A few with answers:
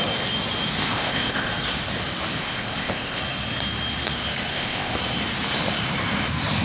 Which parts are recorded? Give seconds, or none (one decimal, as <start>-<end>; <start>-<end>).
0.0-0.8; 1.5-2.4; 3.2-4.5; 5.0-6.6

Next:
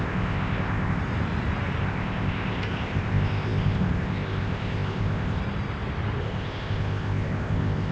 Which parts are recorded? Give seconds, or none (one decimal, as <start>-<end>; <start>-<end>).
1.0-1.8; 5.4-6.2

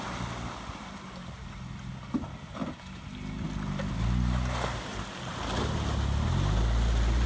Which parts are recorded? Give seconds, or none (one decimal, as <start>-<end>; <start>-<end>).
0.0-7.3

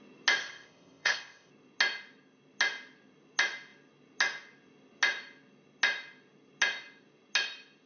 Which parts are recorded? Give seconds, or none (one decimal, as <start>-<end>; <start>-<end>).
0.0-0.4; 1.5-7.9